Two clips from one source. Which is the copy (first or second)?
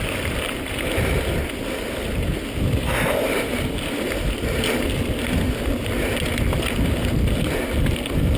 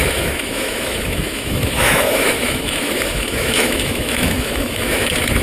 second